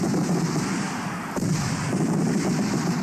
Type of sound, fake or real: real